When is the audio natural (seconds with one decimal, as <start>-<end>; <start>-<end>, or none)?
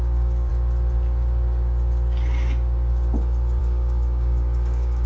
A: 0.5-3.6